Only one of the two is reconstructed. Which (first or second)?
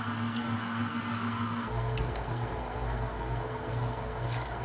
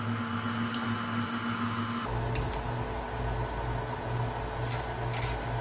first